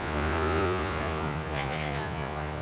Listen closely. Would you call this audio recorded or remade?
remade